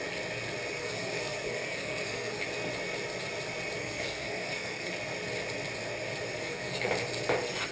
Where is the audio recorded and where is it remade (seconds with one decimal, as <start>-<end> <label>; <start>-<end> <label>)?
0.0-0.8 recorded; 0.8-2.4 remade; 2.4-3.8 recorded; 3.8-4.9 remade; 4.9-6.4 recorded; 6.4-6.9 remade; 6.9-7.7 recorded